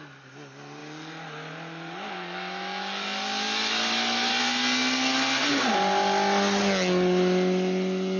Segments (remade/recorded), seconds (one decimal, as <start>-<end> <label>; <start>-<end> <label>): 0.0-8.2 recorded